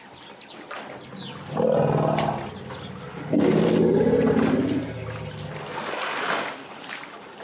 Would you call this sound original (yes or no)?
yes